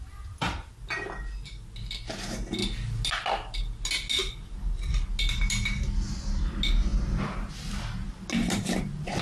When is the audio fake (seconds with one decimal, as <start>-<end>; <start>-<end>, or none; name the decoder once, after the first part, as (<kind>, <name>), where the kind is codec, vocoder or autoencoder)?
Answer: none